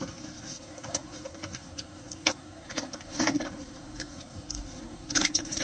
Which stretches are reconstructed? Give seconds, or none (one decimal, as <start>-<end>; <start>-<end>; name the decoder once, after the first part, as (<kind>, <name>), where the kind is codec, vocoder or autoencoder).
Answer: 0.0-5.6 (codec, SNAC)

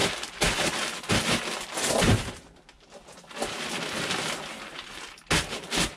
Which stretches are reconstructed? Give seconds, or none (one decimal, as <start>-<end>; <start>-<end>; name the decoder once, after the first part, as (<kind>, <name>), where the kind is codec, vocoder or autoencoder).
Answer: none

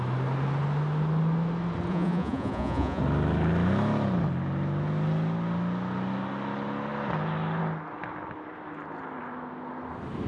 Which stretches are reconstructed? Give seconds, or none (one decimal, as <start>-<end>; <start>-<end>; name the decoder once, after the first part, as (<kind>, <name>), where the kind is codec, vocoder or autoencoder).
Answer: 1.9-3.0 (vocoder, Vocos)

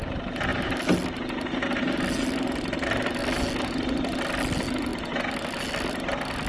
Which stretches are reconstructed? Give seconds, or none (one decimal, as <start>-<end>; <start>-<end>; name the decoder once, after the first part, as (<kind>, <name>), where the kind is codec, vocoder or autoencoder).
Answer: none

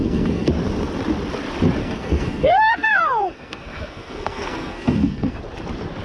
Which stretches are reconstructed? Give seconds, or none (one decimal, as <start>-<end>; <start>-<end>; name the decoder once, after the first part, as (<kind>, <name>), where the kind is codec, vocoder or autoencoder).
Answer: 0.0-0.5 (codec, SNAC); 1.8-5.4

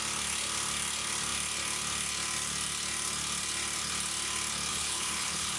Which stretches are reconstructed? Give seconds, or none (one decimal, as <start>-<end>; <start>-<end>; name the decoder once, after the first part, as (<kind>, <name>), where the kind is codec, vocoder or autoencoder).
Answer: 4.7-5.6 (codec, HILCodec)

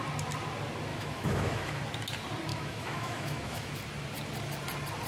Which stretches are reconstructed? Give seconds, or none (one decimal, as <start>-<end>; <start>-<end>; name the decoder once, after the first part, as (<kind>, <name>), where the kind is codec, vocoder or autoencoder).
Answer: 0.9-1.8 (autoencoder, DAC-VAE); 2.5-3.7

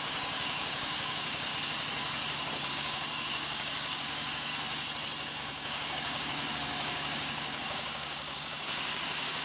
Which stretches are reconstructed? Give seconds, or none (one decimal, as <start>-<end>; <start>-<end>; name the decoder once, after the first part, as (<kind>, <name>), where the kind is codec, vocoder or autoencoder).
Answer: 0.0-1.5 (codec, DAC); 2.7-4.5; 5.4-9.4